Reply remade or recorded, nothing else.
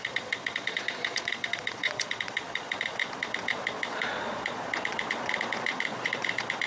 remade